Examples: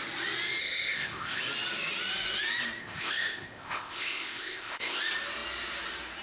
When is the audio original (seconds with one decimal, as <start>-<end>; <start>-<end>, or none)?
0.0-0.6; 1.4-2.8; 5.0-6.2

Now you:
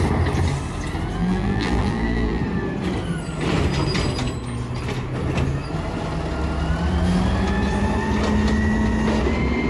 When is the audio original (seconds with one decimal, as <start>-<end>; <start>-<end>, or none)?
0.0-1.2; 2.4-9.7

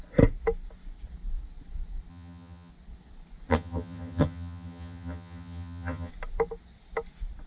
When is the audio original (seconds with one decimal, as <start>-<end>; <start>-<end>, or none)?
0.0-2.1; 2.7-3.5; 6.1-7.5